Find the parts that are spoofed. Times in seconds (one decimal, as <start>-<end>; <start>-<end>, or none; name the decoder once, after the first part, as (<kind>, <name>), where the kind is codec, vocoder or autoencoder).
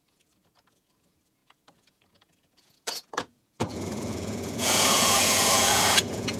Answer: 0.0-6.4 (vocoder, Vocos)